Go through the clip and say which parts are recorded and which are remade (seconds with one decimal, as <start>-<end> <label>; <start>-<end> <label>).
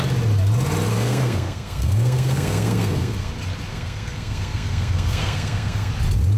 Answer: 0.0-0.9 recorded; 0.9-3.3 remade; 3.3-3.7 recorded; 3.7-5.9 remade; 5.9-6.4 recorded